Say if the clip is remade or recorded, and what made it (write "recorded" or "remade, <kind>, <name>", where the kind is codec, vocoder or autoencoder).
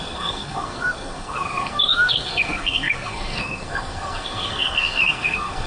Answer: remade, codec, SNAC